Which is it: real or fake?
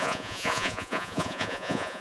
fake